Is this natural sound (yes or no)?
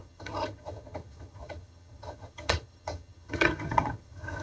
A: no